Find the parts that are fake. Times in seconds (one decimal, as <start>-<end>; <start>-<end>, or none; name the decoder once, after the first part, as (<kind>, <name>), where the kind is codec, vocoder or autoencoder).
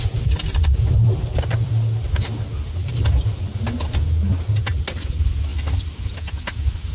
2.9-3.5 (vocoder, BigVGAN v2); 5.5-6.1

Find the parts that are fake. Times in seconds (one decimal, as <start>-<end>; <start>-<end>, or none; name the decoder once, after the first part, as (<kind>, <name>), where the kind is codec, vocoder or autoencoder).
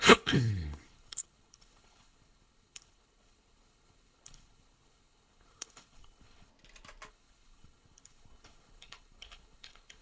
0.0-6.5 (codec, HILCodec); 7.1-10.0